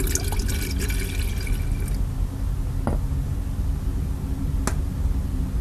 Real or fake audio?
real